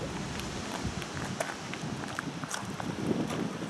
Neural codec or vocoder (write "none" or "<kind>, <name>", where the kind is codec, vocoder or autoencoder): none